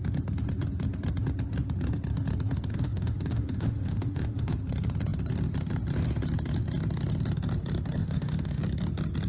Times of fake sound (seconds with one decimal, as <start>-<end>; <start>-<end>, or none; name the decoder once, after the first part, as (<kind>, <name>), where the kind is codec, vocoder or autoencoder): 2.7-4.6 (autoencoder, DAC-VAE); 8.0-8.6